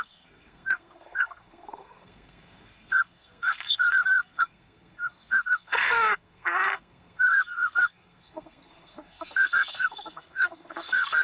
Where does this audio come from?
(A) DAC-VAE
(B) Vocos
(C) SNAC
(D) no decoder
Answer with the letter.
C